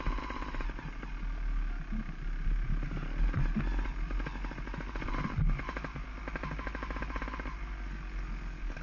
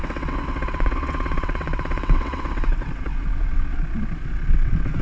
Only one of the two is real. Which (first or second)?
first